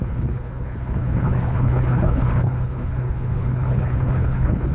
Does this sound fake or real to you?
fake